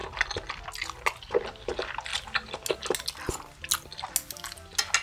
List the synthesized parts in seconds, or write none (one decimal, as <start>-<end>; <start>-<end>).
none